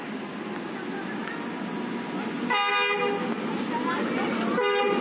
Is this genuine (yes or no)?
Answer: yes